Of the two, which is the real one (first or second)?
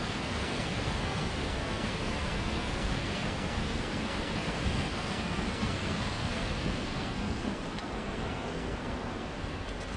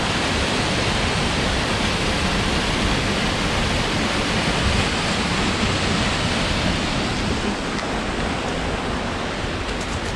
second